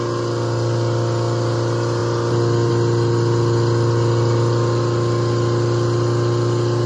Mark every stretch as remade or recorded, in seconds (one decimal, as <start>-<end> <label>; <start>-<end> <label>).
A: 0.0-6.9 recorded